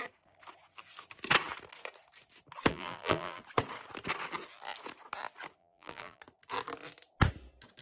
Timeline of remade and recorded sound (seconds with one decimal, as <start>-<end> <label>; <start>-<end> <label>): 0.0-2.7 recorded; 2.7-3.4 remade; 3.4-5.6 recorded; 5.6-6.2 remade; 6.2-7.8 recorded